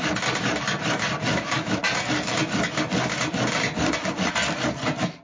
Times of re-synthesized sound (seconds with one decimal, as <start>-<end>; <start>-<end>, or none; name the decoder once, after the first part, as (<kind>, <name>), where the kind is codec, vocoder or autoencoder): 1.3-1.8 (autoencoder, DAC-VAE)